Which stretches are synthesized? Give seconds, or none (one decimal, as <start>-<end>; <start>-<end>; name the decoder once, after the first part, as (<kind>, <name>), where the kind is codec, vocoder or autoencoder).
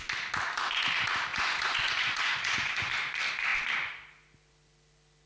1.3-2.9 (vocoder, Vocos)